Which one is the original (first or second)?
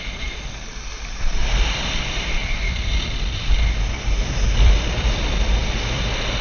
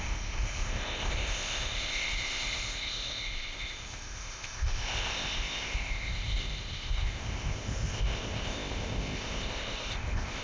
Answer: first